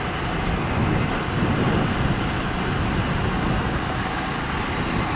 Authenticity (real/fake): real